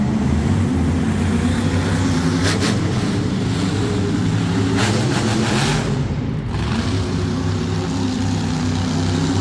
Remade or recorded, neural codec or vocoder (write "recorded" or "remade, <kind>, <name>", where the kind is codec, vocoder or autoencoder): recorded